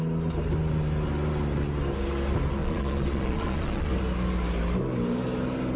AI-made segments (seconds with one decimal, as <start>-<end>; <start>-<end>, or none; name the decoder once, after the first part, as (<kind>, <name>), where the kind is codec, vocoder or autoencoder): 2.6-3.9 (vocoder, Vocos)